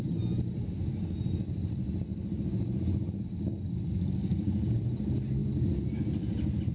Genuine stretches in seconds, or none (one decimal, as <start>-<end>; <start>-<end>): 0.0-4.2; 4.8-6.7